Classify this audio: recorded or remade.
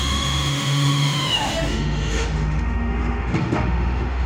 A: remade